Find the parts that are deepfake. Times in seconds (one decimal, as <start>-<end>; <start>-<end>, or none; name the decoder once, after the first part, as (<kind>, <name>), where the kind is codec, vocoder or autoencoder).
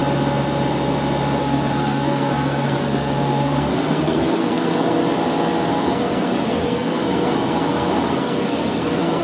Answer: 1.4-5.0 (codec, SNAC); 5.7-9.2